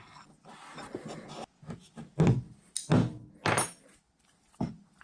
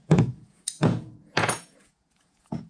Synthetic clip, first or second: second